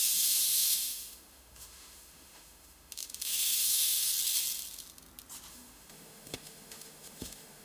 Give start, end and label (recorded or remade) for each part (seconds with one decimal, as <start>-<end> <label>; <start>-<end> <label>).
0.0-4.1 remade; 4.1-5.5 recorded; 5.5-7.6 remade